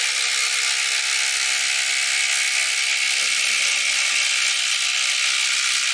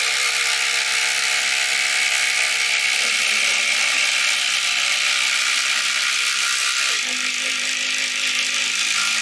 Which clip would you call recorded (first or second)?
first